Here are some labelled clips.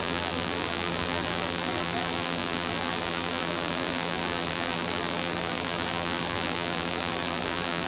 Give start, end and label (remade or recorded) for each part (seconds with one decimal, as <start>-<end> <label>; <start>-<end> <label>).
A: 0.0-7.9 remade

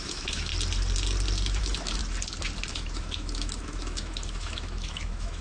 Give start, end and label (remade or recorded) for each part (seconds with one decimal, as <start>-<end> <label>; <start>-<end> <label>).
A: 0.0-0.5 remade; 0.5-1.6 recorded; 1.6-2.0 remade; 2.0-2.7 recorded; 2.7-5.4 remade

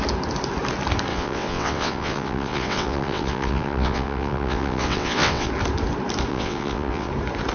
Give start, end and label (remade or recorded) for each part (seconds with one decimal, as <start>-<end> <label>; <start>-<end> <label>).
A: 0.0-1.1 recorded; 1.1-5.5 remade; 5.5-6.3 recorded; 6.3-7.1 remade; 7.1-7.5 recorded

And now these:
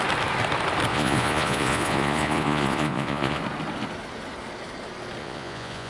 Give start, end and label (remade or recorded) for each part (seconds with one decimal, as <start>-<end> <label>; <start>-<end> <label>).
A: 0.0-0.9 recorded; 0.9-3.4 remade; 3.4-5.2 recorded; 5.2-5.9 remade

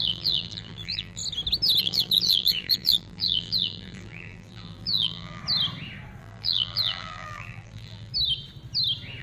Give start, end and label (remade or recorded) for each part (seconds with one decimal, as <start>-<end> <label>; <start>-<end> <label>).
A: 0.0-1.2 remade; 1.2-1.8 recorded; 1.8-5.4 remade; 5.4-6.2 recorded; 6.2-8.1 remade; 8.1-9.2 recorded

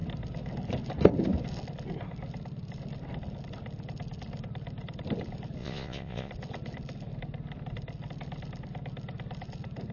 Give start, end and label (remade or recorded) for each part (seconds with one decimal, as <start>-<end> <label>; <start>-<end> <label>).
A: 0.0-5.6 recorded; 5.6-6.3 remade; 6.3-9.9 recorded